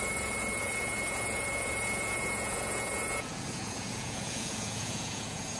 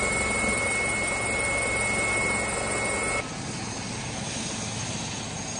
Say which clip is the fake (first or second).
first